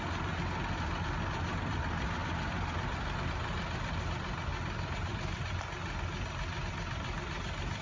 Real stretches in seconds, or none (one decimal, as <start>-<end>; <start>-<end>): 0.0-7.8